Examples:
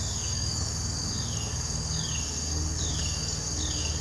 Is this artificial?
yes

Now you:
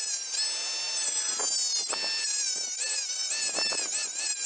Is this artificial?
no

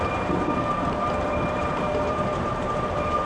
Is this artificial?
yes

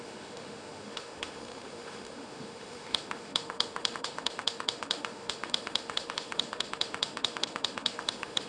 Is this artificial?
yes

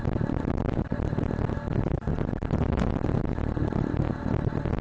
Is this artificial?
no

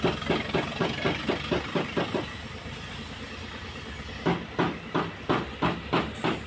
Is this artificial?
no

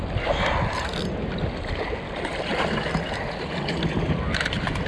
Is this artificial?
no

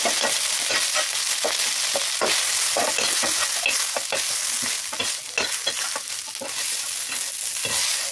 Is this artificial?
no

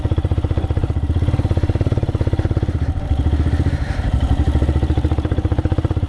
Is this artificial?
yes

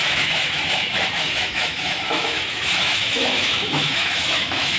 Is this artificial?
yes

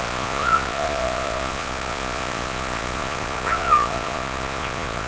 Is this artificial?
yes